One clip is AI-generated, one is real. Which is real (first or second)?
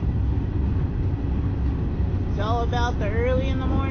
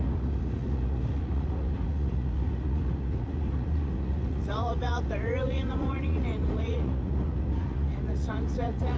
first